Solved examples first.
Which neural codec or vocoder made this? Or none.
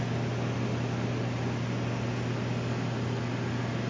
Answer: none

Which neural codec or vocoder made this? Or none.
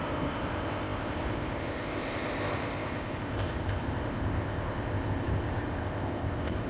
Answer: codec, ZipCodec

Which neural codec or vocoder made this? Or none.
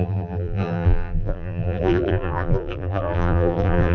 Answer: vocoder, BigVGAN v2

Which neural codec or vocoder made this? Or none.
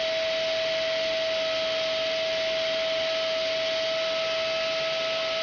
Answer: none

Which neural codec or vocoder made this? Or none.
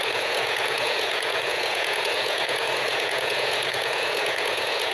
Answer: vocoder, Vocos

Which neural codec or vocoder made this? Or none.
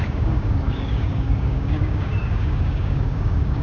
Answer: codec, DAC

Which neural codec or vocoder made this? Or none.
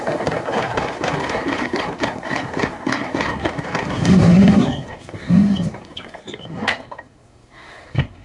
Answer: codec, SNAC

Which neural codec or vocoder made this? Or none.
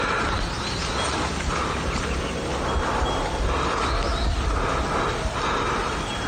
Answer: none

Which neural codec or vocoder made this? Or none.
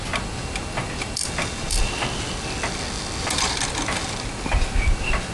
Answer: none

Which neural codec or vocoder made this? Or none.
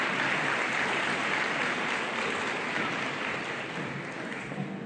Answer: none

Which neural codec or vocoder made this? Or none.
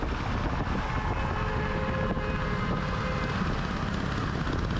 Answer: none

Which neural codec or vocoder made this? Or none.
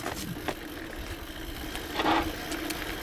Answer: none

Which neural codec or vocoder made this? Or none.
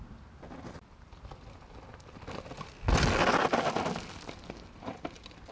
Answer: none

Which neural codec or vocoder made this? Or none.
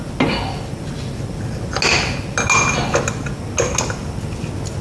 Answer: none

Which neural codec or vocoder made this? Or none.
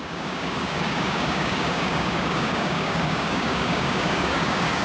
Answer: codec, DAC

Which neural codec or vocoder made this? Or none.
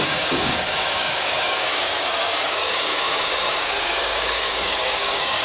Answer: codec, DAC